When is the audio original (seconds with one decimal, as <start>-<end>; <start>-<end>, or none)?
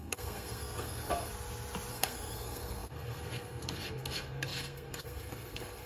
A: 1.3-1.9